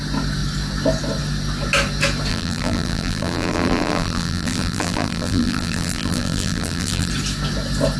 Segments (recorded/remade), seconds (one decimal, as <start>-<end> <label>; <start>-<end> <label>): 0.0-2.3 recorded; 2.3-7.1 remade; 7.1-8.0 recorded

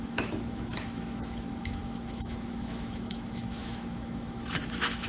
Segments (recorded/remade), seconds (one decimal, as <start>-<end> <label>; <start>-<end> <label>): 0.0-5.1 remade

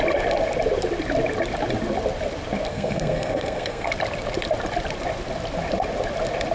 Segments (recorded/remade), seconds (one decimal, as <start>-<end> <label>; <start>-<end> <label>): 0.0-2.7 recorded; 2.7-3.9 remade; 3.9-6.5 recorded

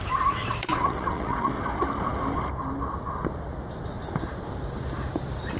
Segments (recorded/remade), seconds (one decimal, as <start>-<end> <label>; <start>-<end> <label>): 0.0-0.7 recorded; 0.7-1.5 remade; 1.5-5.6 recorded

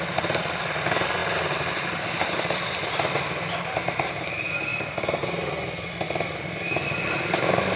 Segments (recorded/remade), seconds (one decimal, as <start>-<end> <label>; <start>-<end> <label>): 0.0-7.8 recorded

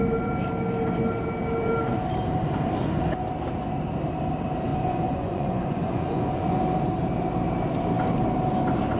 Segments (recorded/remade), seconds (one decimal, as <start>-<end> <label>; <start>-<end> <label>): 0.0-4.7 recorded; 4.7-6.6 remade; 6.6-9.0 recorded

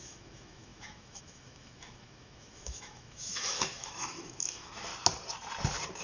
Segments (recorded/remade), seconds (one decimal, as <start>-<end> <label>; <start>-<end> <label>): 0.0-4.9 remade; 4.9-6.0 recorded

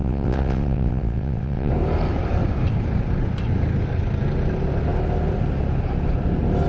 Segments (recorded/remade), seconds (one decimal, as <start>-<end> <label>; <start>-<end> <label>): 0.0-1.7 remade; 1.7-6.7 recorded